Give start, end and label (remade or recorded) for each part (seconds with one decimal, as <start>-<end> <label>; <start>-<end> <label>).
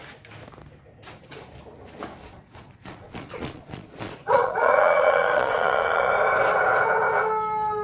0.0-2.2 recorded; 2.2-6.1 remade; 6.1-7.8 recorded